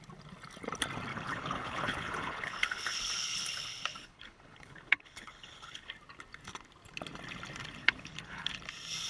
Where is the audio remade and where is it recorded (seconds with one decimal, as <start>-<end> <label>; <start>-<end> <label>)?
0.0-1.1 recorded; 1.1-5.9 remade; 5.9-7.8 recorded; 7.8-8.5 remade; 8.5-9.1 recorded